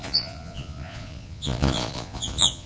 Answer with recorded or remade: remade